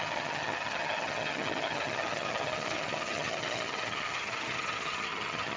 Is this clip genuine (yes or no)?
no